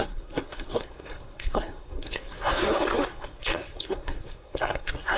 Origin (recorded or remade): remade